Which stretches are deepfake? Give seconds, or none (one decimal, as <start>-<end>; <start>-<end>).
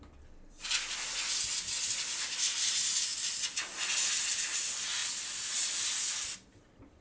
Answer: 0.0-3.1; 4.2-7.0